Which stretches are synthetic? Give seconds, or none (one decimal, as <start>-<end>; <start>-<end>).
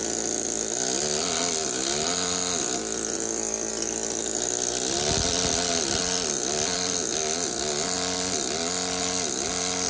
none